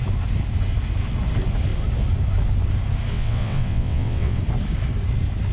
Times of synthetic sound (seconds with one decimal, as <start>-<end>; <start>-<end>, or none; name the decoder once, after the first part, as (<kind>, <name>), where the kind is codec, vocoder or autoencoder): 3.1-4.4 (vocoder, WaveNeXt)